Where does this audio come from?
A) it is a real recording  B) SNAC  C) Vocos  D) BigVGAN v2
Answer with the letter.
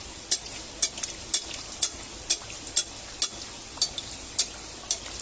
A